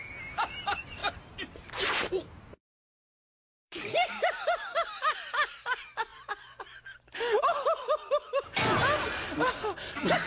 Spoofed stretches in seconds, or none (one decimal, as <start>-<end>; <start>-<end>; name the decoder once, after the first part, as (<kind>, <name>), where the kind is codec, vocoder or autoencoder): 1.0-2.6 (vocoder, BigVGAN v2); 3.3-5.2; 6.1-6.8